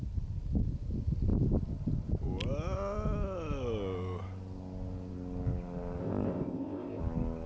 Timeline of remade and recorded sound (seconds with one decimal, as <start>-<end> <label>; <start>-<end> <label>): 0.0-6.0 recorded; 6.0-7.0 remade; 7.0-7.5 recorded